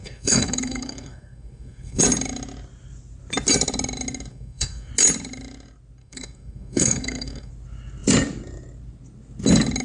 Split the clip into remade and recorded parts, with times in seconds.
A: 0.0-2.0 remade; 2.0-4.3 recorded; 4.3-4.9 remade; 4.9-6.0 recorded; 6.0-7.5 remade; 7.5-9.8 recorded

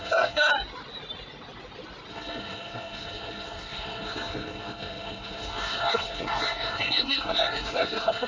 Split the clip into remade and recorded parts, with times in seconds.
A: 0.0-0.5 remade; 0.5-2.1 recorded; 2.1-8.3 remade

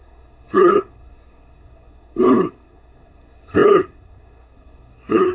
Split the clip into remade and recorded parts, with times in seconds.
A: 0.0-5.3 remade

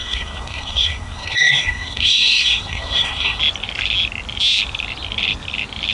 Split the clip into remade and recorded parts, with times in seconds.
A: 0.0-3.4 remade; 3.4-5.9 recorded